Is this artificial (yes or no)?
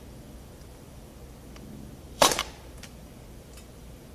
yes